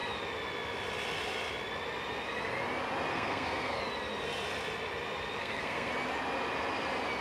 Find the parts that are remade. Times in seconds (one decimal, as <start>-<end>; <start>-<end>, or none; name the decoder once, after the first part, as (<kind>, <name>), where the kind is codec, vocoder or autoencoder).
3.1-3.8 (codec, SNAC); 5.4-5.9